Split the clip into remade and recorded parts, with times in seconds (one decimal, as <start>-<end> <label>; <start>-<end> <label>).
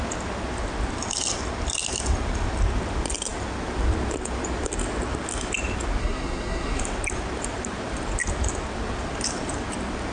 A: 0.0-6.0 recorded; 6.0-6.8 remade; 6.8-10.1 recorded